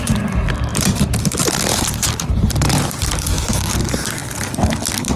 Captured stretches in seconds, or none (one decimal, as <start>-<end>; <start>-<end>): 0.0-0.7; 3.8-5.2